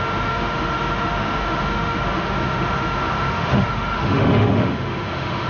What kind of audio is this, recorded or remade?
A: remade